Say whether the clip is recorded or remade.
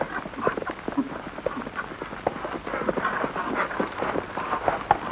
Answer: recorded